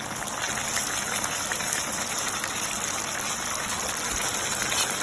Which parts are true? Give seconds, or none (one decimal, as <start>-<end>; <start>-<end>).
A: 0.0-5.0